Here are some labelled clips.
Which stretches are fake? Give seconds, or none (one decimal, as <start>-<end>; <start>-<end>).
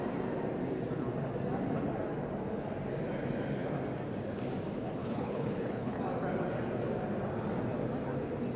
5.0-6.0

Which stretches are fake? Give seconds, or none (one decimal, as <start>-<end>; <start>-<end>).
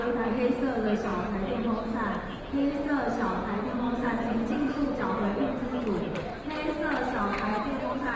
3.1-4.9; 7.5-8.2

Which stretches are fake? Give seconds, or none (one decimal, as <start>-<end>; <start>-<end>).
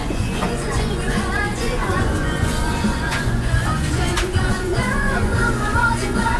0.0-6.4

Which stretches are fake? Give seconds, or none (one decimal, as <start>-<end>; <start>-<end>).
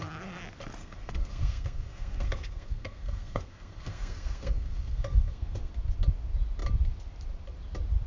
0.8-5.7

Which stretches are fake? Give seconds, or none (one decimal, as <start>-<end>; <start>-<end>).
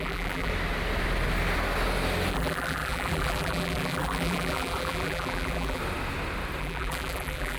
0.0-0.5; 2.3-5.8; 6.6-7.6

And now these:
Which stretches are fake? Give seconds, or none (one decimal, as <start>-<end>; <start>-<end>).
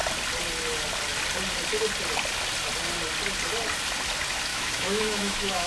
4.5-5.7